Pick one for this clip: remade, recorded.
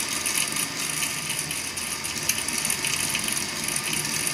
recorded